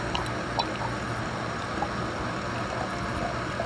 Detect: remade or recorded recorded